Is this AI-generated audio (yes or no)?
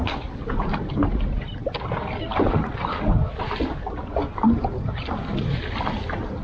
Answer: no